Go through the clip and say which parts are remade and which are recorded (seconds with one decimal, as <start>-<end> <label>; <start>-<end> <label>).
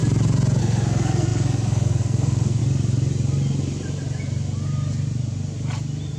0.0-0.6 recorded; 0.6-2.6 remade; 2.6-6.2 recorded